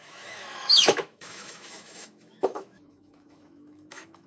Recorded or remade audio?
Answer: remade